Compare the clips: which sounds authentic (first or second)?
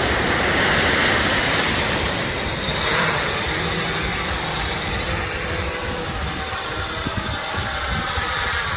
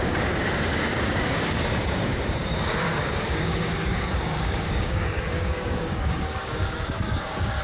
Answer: first